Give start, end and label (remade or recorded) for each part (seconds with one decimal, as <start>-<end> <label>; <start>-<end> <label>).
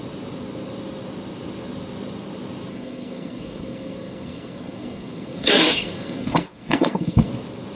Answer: 0.0-2.7 recorded; 2.7-7.3 remade; 7.3-7.7 recorded